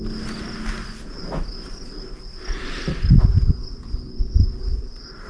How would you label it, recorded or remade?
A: recorded